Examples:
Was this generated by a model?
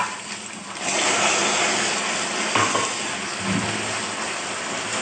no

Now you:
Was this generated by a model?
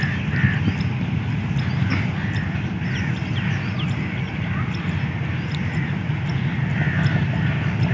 no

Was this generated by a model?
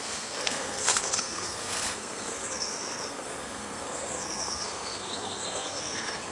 yes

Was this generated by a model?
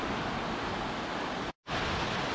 no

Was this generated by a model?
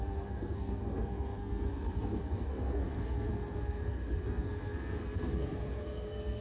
yes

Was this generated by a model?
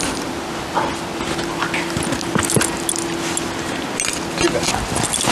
no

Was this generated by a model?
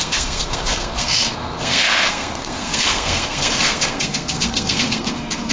yes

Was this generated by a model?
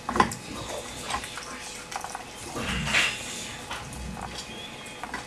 no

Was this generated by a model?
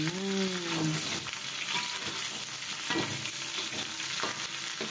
no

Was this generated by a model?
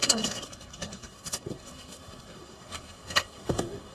yes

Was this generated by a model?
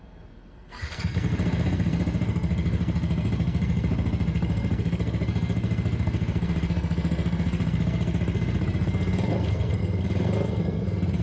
yes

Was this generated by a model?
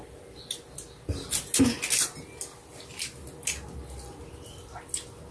no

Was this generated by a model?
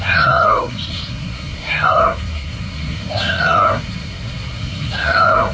yes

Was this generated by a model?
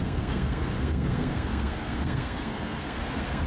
yes